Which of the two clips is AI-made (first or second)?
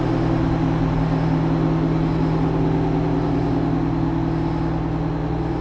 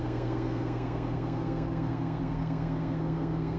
second